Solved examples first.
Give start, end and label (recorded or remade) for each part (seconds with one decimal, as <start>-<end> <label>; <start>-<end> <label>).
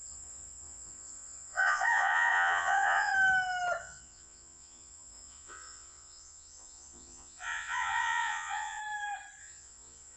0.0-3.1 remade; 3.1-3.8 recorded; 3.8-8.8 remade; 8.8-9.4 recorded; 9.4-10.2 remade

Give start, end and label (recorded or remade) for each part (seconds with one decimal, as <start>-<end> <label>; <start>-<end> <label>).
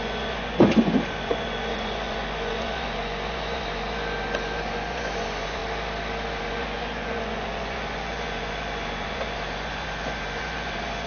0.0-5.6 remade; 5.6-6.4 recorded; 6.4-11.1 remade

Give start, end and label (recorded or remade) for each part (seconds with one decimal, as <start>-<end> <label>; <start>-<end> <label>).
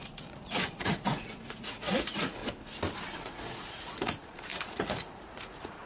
0.0-2.4 remade; 2.4-3.2 recorded; 3.2-5.9 remade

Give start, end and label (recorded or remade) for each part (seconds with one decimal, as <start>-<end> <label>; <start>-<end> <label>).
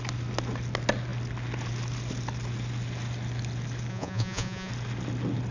0.0-3.9 recorded; 3.9-4.7 remade; 4.7-5.5 recorded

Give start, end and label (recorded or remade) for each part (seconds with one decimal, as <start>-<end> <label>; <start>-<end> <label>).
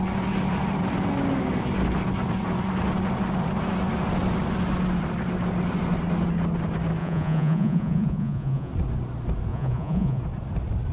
0.0-7.0 recorded; 7.0-8.7 remade; 8.7-9.5 recorded; 9.5-10.2 remade; 10.2-10.9 recorded